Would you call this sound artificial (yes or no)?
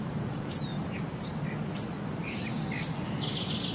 no